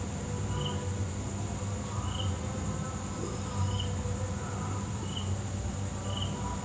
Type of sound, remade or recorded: recorded